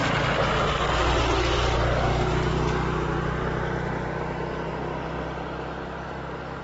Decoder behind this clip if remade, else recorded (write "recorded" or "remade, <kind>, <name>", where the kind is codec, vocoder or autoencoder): recorded